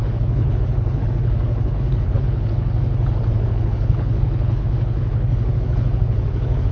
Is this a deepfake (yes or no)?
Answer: yes